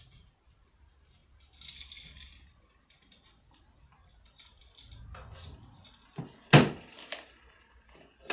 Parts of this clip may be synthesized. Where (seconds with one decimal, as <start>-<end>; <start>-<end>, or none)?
none